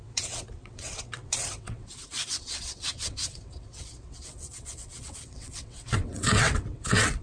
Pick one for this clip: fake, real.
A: fake